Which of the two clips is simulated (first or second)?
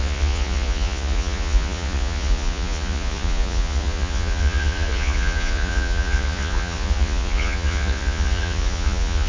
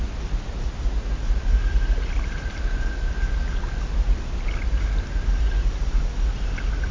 first